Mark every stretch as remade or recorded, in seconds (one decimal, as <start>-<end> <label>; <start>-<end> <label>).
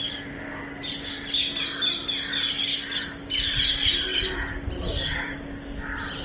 0.0-6.2 recorded